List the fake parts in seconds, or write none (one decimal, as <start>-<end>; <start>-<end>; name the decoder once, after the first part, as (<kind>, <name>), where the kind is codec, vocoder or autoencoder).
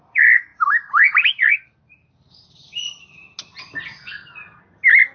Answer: none